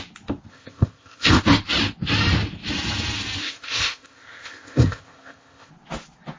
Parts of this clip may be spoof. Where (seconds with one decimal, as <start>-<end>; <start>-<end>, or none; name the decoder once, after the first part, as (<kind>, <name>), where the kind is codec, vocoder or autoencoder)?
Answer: 0.5-1.4 (codec, ZipCodec); 3.4-5.7